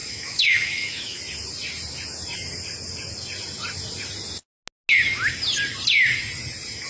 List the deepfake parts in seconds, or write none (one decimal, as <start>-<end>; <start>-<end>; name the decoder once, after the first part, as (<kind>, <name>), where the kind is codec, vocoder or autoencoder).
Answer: 0.0-1.2 (autoencoder, DAC-VAE)